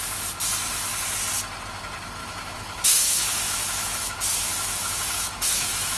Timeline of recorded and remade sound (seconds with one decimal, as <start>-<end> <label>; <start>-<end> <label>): 0.0-2.2 recorded; 2.2-6.0 remade